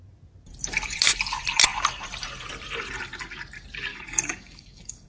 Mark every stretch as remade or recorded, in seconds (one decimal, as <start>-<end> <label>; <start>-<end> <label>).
0.0-3.9 recorded; 3.9-5.1 remade